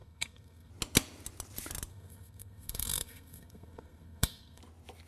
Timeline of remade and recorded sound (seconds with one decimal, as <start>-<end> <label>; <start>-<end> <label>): 0.0-0.7 remade; 0.7-1.9 recorded; 1.9-4.6 remade; 4.6-5.1 recorded